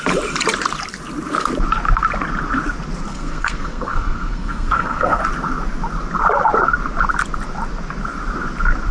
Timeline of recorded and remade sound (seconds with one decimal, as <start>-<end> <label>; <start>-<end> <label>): 0.0-3.1 recorded; 3.1-5.2 remade; 5.2-8.9 recorded